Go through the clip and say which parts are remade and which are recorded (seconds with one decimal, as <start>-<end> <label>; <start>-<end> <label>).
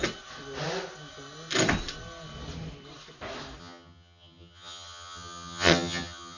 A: 0.0-3.6 recorded; 3.6-6.4 remade